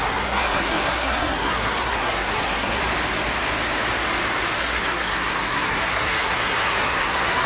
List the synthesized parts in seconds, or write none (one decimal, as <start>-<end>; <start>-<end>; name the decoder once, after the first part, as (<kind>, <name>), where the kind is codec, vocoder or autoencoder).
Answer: 0.0-2.8 (codec, SNAC); 4.6-7.5

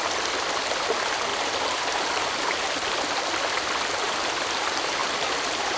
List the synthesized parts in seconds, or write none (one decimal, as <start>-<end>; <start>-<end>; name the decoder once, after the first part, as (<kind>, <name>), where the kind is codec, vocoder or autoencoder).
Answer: none